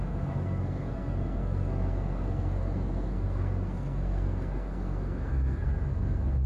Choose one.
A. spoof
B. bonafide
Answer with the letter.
A